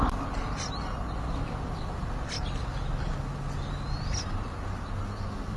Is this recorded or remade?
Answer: recorded